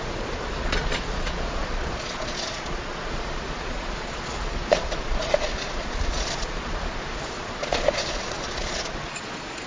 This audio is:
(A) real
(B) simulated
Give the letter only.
B